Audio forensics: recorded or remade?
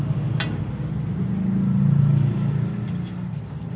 recorded